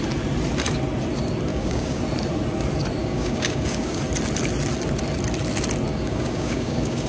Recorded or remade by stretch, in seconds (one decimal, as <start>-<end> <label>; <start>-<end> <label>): 0.0-1.5 recorded; 1.5-2.0 remade; 2.0-3.0 recorded; 3.0-4.0 remade; 4.0-5.9 recorded; 5.9-7.1 remade